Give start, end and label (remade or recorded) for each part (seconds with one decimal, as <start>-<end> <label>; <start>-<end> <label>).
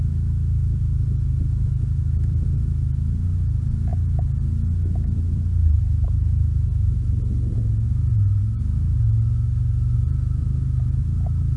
0.0-11.6 recorded